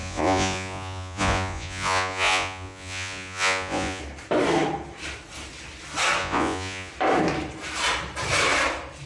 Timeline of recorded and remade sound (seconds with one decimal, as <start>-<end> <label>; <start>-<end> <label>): 0.0-4.0 remade; 4.0-6.2 recorded; 6.2-6.9 remade; 6.9-9.1 recorded